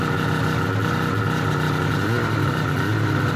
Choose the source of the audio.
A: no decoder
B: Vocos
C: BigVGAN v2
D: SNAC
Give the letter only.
A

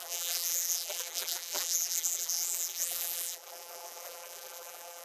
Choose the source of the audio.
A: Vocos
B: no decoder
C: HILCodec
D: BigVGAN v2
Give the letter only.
D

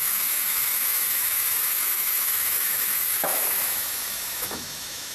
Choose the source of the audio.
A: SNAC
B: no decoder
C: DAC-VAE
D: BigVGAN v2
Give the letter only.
C